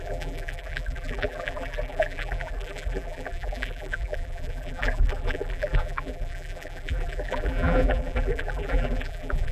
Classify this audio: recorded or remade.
remade